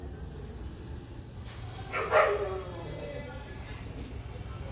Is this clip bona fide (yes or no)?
yes